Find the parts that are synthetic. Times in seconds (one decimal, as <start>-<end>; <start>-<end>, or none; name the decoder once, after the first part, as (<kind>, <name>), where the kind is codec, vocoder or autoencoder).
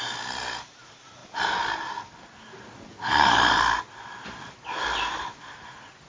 none